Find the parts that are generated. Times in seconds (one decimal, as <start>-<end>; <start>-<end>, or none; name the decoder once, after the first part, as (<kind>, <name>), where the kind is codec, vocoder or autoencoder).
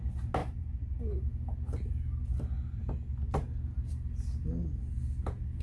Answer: 0.4-1.0 (vocoder, BigVGAN v2)